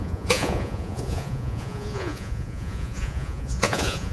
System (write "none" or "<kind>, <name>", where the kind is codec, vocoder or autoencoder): vocoder, Vocos